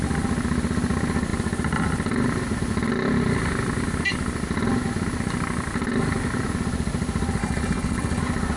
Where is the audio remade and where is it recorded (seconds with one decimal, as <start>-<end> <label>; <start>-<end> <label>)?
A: 0.0-7.4 recorded; 7.4-8.2 remade; 8.2-8.6 recorded